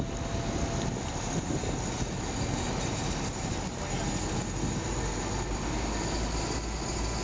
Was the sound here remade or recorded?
recorded